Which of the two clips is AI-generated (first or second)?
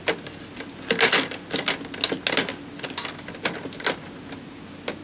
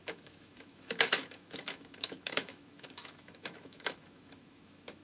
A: second